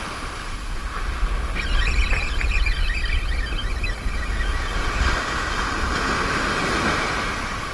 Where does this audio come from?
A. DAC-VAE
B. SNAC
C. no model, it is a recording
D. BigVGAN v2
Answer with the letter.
C